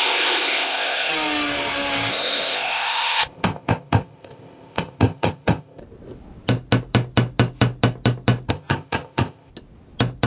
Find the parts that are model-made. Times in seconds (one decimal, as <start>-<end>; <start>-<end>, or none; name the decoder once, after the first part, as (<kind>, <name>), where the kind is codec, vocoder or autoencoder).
0.0-1.1 (codec, ZipCodec); 2.1-5.8; 8.5-9.5